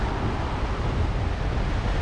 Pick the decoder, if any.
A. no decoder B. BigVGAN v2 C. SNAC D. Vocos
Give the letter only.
A